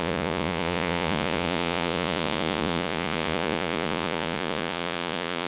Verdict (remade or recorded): remade